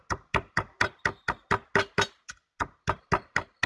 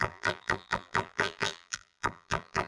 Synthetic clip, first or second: second